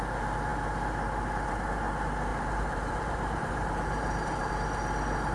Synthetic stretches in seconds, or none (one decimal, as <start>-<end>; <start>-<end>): 2.3-4.5